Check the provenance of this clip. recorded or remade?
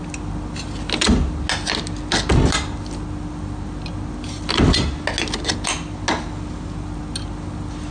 recorded